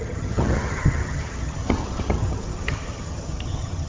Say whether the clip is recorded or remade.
remade